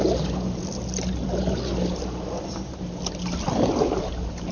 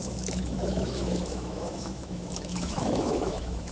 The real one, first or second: first